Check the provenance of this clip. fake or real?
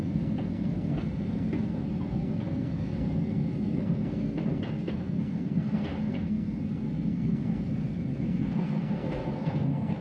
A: fake